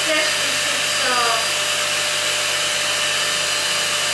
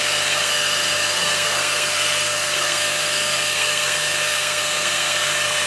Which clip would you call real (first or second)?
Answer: first